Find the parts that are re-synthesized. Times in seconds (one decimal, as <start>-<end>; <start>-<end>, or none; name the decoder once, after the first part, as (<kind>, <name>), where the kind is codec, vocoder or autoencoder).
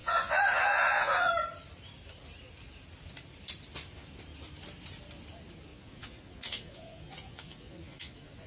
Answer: 0.0-1.3 (vocoder, Vocos); 5.7-8.5